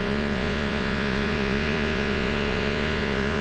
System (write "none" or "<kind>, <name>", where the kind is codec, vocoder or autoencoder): vocoder, Vocos